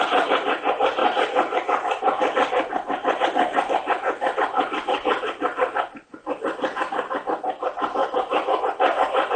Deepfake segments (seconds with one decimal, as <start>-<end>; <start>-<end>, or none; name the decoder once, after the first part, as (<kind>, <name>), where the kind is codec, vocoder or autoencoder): none